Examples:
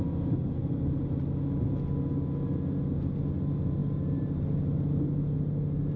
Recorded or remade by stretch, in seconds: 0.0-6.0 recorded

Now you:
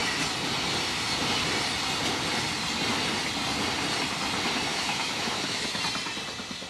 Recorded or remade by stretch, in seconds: 0.0-4.7 recorded; 4.7-5.8 remade; 5.8-6.7 recorded

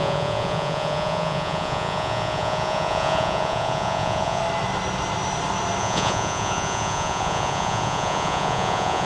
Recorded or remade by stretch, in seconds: 0.0-4.4 remade; 4.4-5.8 recorded; 5.8-9.1 remade

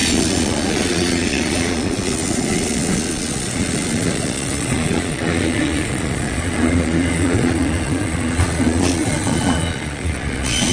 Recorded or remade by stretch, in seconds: 0.0-10.7 remade